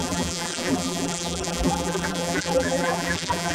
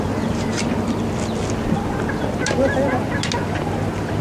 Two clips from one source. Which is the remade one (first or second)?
first